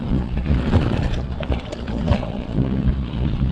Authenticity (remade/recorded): remade